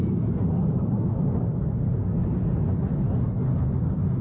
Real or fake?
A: real